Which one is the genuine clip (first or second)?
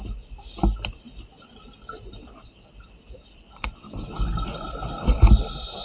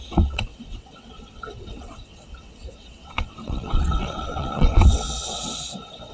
first